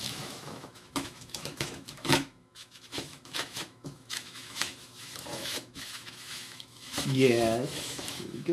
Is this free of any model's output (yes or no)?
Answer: no